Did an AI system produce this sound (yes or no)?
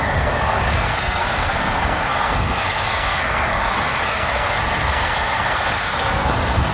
yes